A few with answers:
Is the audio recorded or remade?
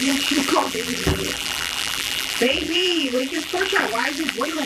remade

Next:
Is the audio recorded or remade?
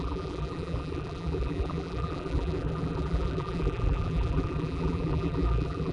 remade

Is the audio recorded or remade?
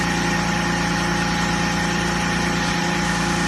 recorded